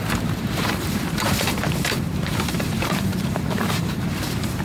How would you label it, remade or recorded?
remade